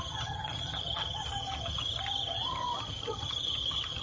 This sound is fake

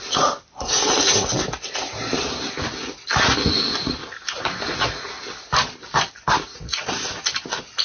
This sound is real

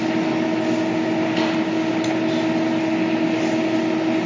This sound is real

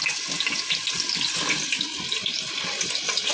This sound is real